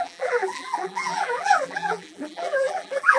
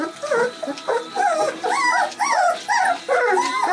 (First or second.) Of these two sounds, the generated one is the first